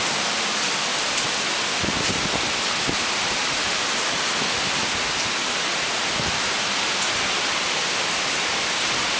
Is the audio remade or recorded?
recorded